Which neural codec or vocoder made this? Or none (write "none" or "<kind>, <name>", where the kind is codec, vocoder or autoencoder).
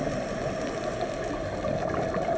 none